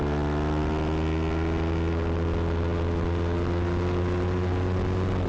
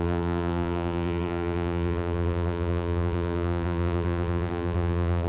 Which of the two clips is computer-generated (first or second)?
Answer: second